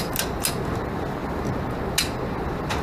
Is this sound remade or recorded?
recorded